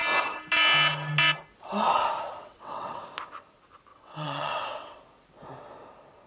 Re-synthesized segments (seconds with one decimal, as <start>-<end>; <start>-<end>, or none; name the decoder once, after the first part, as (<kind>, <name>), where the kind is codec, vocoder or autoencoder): 2.4-3.0 (vocoder, WaveNeXt); 3.9-5.0